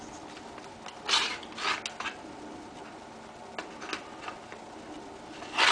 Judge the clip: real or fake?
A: real